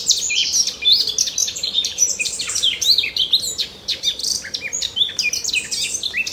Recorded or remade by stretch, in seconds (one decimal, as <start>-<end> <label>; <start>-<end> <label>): 0.0-1.4 recorded; 1.4-3.1 remade; 3.1-4.2 recorded; 4.2-5.5 remade; 5.5-6.3 recorded

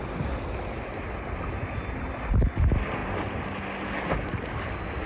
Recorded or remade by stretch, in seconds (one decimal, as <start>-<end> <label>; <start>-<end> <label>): 0.0-5.1 recorded

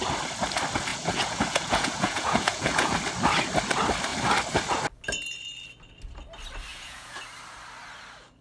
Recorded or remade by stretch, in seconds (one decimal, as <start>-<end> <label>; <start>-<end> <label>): 0.0-0.9 recorded; 0.9-2.9 remade; 2.9-6.7 recorded; 6.7-7.2 remade; 7.2-8.4 recorded

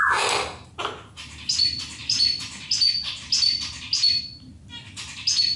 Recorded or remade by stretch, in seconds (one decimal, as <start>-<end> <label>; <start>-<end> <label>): 0.0-5.6 recorded